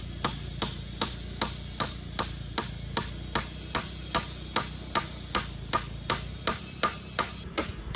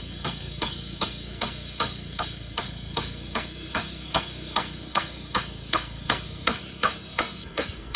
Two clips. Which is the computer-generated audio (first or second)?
second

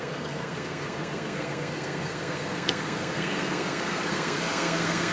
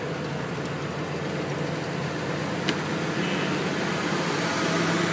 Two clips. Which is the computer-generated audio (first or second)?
first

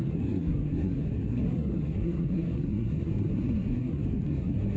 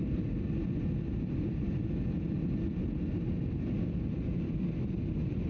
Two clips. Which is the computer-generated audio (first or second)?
first